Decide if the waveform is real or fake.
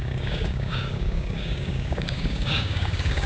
fake